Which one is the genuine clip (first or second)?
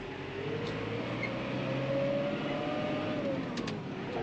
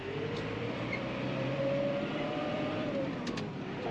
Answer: first